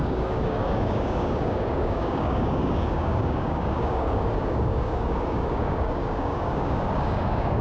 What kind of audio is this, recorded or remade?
remade